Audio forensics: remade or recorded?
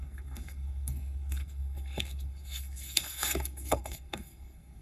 remade